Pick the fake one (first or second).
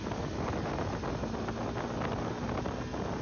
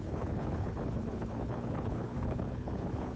second